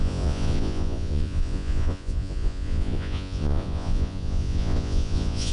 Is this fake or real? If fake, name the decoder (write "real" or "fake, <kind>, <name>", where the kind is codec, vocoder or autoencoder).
fake, vocoder, Vocos